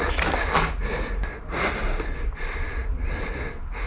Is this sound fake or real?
real